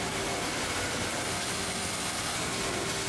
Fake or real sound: real